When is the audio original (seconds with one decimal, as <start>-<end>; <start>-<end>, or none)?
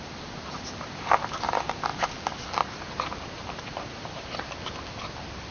0.0-5.5